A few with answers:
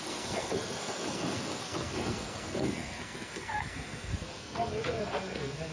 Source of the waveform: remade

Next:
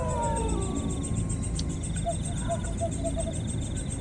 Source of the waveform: recorded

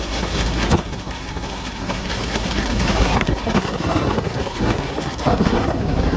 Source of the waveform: remade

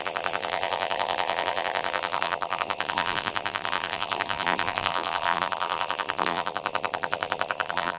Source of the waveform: remade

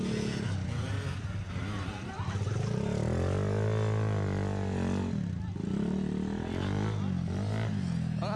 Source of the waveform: recorded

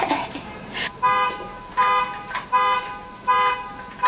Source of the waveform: remade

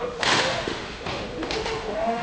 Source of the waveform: remade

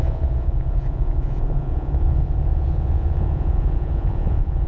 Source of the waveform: remade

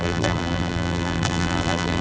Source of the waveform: remade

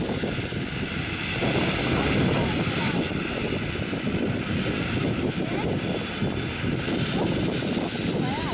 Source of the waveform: recorded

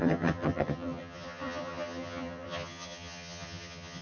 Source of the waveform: remade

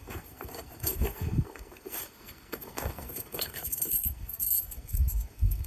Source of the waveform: remade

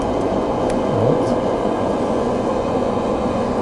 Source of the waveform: remade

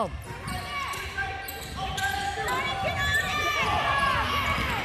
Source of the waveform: recorded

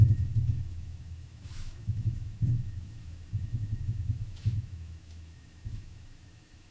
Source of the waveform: remade